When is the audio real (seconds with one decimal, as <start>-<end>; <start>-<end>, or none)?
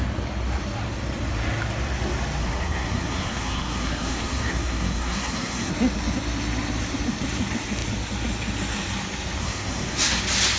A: 0.0-2.4; 5.7-9.4; 10.2-10.6